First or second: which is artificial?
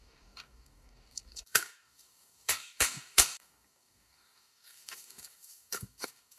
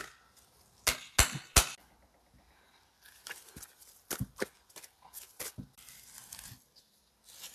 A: first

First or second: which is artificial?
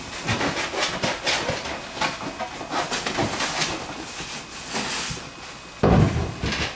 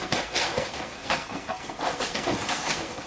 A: second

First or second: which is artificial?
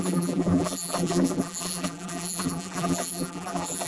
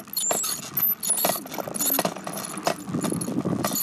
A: first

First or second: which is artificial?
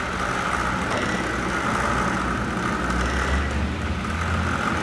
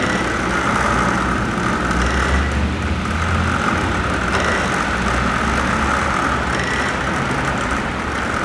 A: second